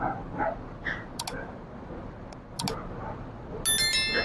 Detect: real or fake real